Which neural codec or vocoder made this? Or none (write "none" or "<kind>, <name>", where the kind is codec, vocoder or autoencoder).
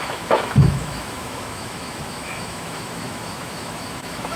autoencoder, DAC-VAE